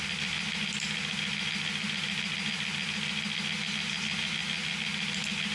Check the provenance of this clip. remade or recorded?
recorded